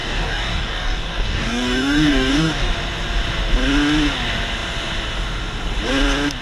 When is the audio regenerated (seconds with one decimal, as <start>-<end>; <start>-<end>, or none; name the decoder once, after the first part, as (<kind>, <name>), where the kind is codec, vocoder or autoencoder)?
0.0-2.7 (codec, DAC)